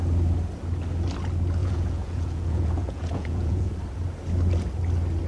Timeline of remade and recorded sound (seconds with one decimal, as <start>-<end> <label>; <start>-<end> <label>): 0.0-1.6 recorded; 1.6-3.7 remade; 3.7-5.3 recorded